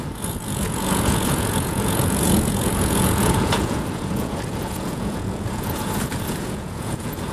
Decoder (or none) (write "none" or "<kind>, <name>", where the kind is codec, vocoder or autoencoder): vocoder, Vocos